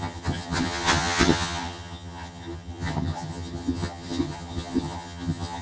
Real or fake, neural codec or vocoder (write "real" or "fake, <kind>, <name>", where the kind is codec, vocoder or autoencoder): fake, vocoder, HiFi-GAN